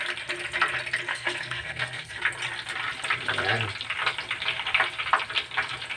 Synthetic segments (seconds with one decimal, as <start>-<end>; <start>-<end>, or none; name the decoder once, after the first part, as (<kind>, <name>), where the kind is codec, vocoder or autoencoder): 1.1-2.2 (codec, SNAC)